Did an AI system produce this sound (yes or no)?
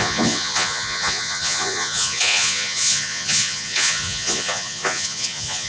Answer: yes